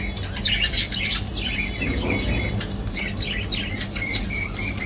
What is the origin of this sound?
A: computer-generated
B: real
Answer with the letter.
B